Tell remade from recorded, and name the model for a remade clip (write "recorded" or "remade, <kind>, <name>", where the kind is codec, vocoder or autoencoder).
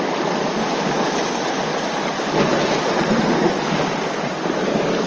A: recorded